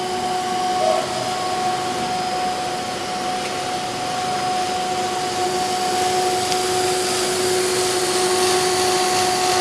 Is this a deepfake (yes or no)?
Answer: no